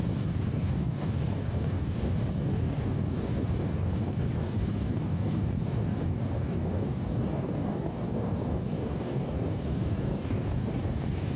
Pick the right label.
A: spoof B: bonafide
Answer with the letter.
A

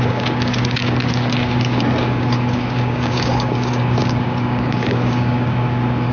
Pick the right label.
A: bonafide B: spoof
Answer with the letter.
B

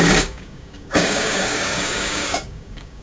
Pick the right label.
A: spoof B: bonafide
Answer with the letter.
A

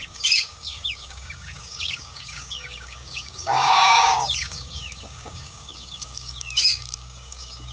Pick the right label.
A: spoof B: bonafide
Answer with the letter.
A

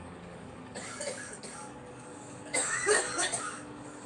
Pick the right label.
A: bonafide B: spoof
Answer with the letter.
B